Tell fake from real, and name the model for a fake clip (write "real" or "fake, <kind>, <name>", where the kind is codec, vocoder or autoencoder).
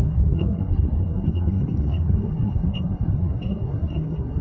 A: fake, codec, SNAC